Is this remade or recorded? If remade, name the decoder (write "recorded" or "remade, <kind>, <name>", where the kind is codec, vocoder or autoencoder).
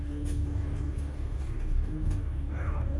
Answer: remade, codec, DAC